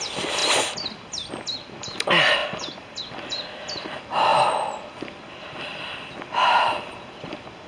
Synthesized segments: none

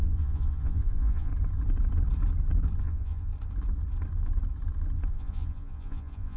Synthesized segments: 0.0-1.3 (vocoder, Vocos); 2.8-3.3; 5.1-6.4

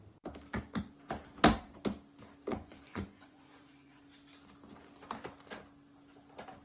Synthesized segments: 2.5-4.0 (vocoder, Vocos)

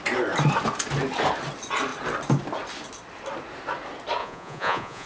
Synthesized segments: 4.2-5.1 (vocoder, Vocos)

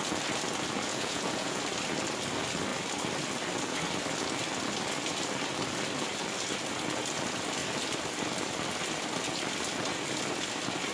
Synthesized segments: 0.9-1.6 (vocoder, Vocos)

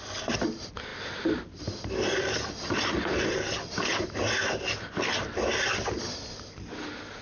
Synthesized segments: none